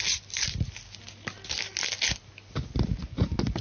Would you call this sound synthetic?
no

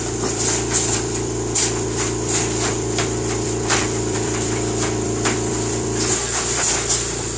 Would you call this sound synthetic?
yes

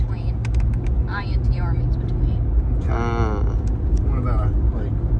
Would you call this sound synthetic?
no